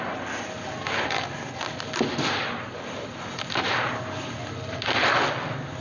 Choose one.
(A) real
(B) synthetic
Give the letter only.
A